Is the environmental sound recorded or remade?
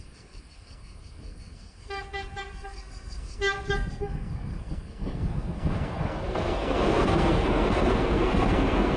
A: remade